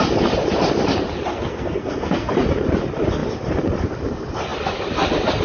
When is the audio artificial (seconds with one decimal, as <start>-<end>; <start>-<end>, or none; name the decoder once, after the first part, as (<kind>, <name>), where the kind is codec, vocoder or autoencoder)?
1.3-2.3 (codec, SNAC)